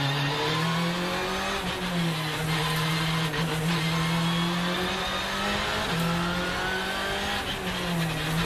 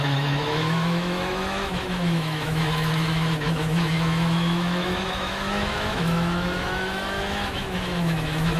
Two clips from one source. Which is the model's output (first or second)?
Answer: second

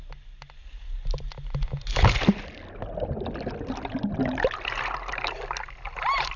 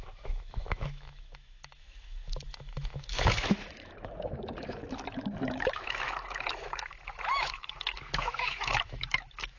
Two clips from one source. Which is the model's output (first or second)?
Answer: second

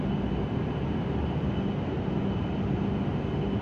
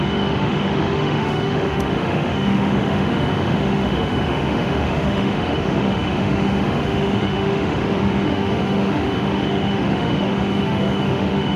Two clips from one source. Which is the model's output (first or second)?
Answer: second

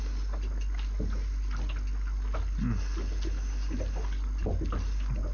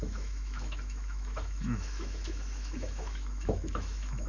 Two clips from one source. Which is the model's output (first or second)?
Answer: second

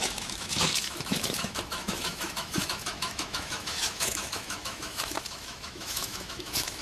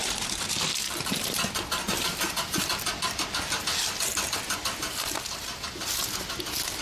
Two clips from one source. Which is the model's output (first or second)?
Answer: first